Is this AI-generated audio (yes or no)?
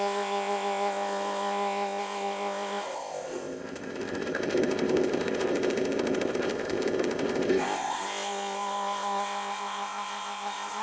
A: yes